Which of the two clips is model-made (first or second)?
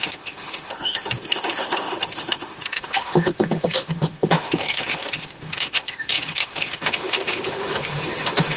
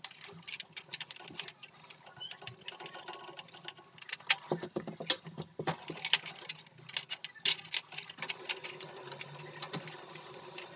first